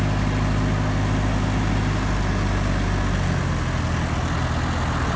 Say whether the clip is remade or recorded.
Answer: recorded